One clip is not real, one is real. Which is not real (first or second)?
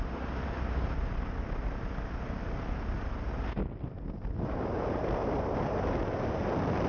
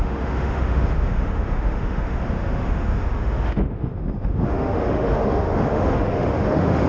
second